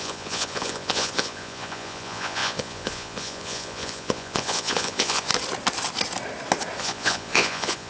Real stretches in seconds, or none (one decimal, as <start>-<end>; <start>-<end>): 5.3-6.8